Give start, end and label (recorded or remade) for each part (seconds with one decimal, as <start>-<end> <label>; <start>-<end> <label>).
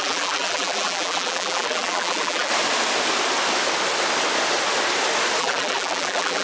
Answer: 0.0-2.5 remade; 2.5-5.4 recorded; 5.4-6.4 remade